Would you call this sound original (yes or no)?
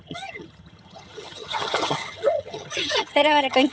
no